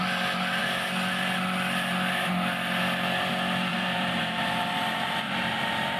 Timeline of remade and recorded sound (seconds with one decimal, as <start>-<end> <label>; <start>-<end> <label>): 0.0-3.7 recorded; 3.7-6.0 remade

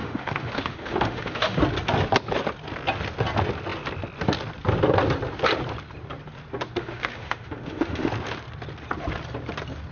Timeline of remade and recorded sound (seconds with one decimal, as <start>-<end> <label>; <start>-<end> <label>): 0.0-1.6 remade; 1.6-6.8 recorded; 6.8-8.1 remade; 8.1-9.9 recorded

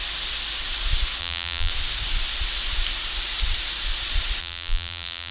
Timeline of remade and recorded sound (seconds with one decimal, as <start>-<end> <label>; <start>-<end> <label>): 0.0-1.2 recorded; 1.2-1.7 remade; 1.7-4.4 recorded; 4.4-5.3 remade

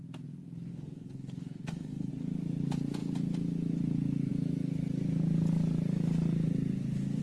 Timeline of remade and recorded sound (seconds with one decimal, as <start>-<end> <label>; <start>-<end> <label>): 0.0-0.7 recorded; 0.7-2.1 remade; 2.1-7.2 recorded

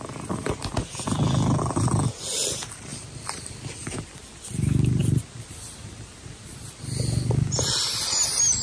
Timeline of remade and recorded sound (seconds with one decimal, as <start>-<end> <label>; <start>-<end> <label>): 0.0-8.6 recorded

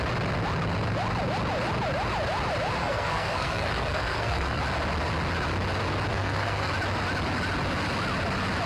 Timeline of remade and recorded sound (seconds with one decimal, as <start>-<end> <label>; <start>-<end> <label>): 0.0-2.8 recorded; 2.8-4.6 remade; 4.6-6.1 recorded; 6.1-6.7 remade; 6.7-8.7 recorded

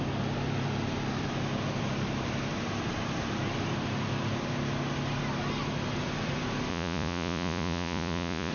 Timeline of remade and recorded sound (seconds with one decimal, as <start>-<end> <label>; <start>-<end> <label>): 0.0-6.7 recorded; 6.7-8.5 remade

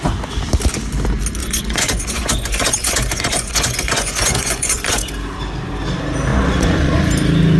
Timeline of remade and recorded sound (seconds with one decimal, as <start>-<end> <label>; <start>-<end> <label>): 0.0-1.4 recorded; 1.4-5.1 remade; 5.1-6.3 recorded; 6.3-7.0 remade; 7.0-7.6 recorded